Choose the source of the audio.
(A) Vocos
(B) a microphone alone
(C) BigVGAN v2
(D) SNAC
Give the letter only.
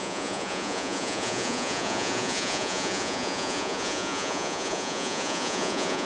A